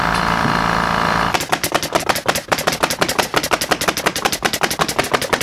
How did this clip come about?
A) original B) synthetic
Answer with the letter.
A